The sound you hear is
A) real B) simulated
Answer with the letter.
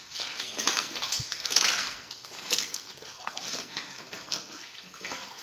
B